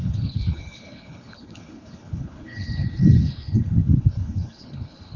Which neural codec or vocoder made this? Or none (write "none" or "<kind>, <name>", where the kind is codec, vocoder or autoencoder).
codec, HILCodec